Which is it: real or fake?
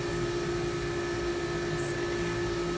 real